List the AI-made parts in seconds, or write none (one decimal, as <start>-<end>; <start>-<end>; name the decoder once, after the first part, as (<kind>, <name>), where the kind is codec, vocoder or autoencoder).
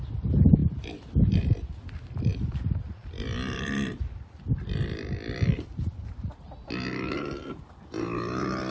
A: 0.6-1.4 (vocoder, BigVGAN v2)